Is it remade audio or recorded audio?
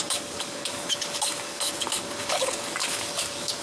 remade